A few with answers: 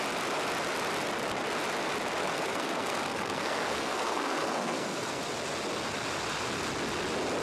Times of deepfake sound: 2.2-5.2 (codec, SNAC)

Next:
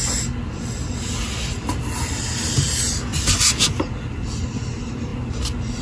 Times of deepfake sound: none

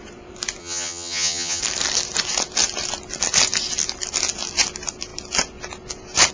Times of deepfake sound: 0.6-1.6 (vocoder, HiFi-GAN)

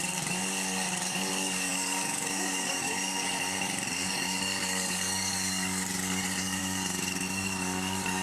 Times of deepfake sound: 0.0-8.2 (codec, DAC)

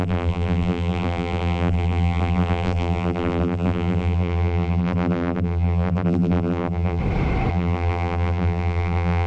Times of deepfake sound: 0.0-7.0 (vocoder, BigVGAN v2); 7.5-9.3

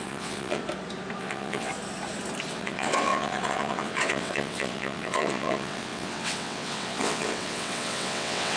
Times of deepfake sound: 0.0-0.6 (vocoder, WaveNeXt); 1.2-1.7; 2.5-8.6